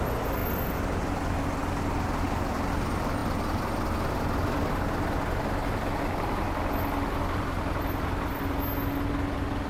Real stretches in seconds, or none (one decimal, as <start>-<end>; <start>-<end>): 0.0-9.7